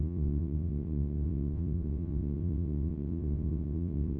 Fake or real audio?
fake